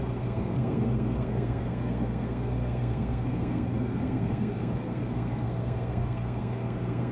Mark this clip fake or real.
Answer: fake